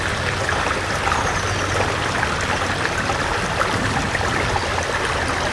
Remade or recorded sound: recorded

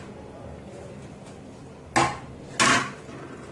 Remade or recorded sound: recorded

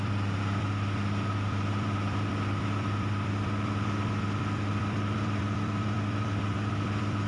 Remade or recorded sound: remade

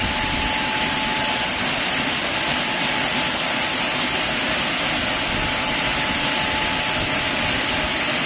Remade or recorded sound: recorded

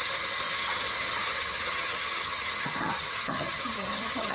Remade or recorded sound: remade